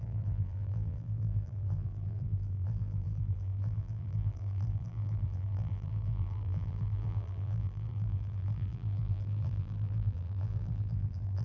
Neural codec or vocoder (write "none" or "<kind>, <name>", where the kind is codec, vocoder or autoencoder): vocoder, BigVGAN v2